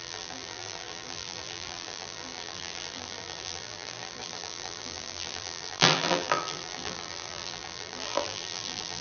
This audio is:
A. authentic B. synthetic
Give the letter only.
B